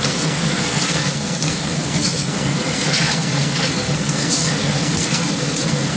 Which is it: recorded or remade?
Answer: remade